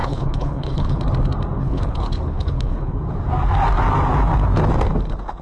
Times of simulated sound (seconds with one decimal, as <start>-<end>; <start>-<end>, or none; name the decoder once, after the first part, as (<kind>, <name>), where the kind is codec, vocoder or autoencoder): 0.0-1.0 (codec, HILCodec); 1.6-2.9